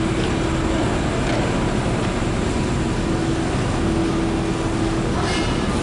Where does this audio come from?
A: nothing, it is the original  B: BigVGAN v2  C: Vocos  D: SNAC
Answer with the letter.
A